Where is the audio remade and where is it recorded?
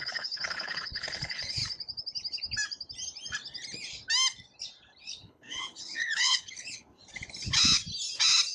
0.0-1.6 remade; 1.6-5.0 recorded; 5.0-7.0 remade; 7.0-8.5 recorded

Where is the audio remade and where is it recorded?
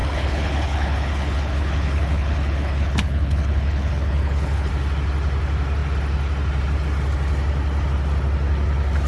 0.0-4.7 remade; 4.7-9.1 recorded